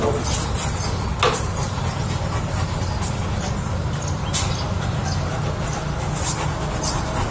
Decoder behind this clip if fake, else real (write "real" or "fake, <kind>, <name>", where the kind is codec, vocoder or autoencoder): real